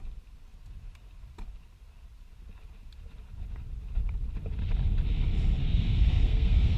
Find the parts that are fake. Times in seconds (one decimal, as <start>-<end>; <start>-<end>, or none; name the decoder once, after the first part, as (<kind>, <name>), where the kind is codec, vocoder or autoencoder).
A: 5.6-6.8 (codec, SNAC)